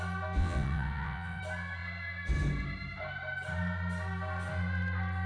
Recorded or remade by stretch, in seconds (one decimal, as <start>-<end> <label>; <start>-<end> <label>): 0.0-0.4 recorded; 0.4-1.4 remade; 1.4-5.3 recorded

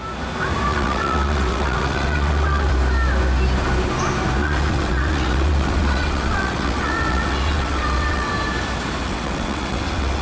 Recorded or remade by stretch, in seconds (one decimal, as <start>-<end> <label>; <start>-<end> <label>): 0.0-0.7 recorded; 0.7-2.7 remade; 2.7-4.4 recorded; 4.4-8.3 remade; 8.3-9.0 recorded; 9.0-10.2 remade